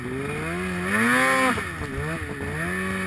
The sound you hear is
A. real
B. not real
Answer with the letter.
A